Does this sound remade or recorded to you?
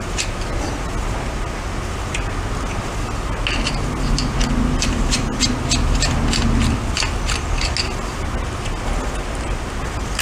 recorded